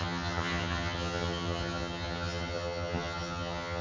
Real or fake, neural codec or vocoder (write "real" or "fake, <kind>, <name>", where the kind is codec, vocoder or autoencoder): fake, vocoder, HiFi-GAN